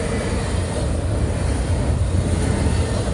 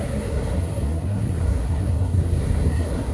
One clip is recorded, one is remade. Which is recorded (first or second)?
first